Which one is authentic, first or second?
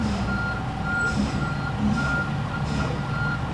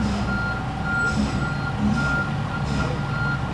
second